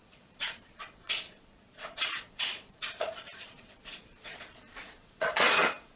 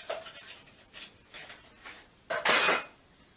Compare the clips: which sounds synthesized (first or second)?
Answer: first